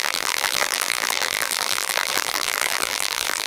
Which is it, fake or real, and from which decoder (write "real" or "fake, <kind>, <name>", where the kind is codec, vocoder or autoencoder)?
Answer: fake, vocoder, BigVGAN v2